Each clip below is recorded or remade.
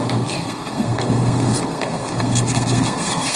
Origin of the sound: remade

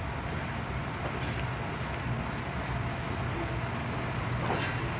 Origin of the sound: recorded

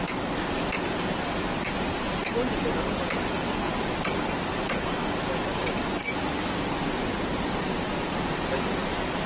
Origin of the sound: recorded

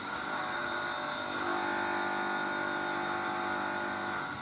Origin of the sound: recorded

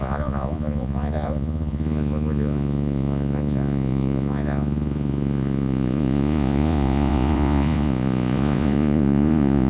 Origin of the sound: remade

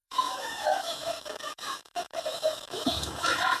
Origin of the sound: remade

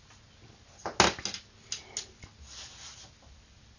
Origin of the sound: recorded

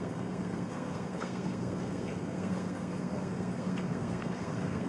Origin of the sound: remade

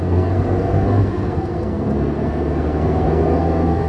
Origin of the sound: remade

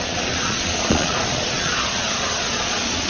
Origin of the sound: remade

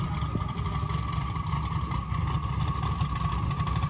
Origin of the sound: recorded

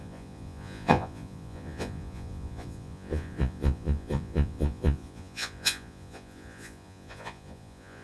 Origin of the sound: remade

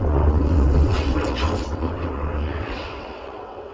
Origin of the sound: remade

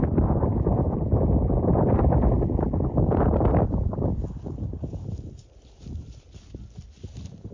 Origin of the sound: remade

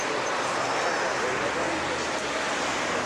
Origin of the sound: recorded